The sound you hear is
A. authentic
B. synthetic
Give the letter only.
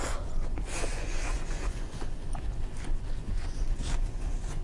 B